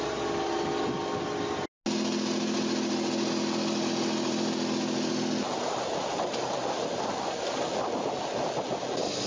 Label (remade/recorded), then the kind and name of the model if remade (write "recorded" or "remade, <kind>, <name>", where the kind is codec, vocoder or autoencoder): recorded